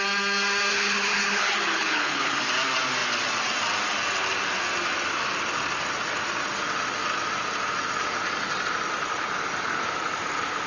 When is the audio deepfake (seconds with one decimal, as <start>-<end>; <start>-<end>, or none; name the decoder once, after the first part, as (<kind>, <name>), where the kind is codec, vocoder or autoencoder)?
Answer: 0.7-2.4 (codec, HILCodec)